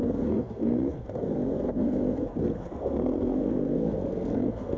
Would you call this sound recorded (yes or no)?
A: no